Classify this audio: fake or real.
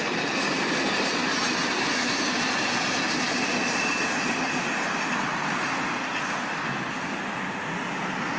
real